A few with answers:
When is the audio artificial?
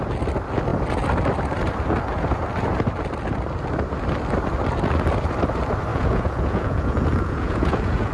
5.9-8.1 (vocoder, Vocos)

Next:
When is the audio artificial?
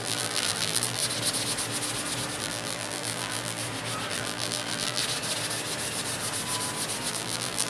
0.0-1.0 (vocoder, BigVGAN v2); 2.4-3.6; 4.1-5.0; 7.1-7.7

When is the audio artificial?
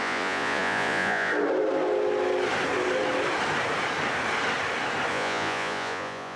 0.0-1.3 (vocoder, Vocos); 5.1-6.4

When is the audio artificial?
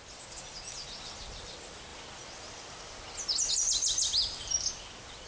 none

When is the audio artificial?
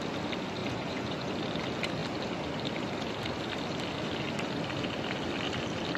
0.6-1.3 (vocoder, Vocos)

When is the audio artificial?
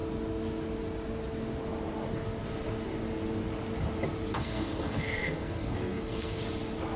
4.3-6.4 (codec, SNAC)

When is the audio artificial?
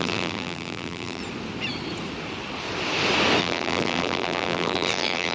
0.0-1.2 (vocoder, BigVGAN v2); 3.4-5.3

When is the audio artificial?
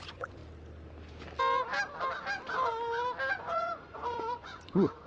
0.0-0.4 (vocoder, Vocos); 3.3-5.1